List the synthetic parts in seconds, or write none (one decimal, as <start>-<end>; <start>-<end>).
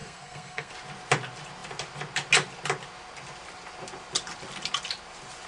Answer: 0.0-0.7